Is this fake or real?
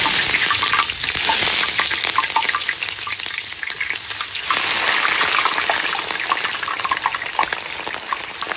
real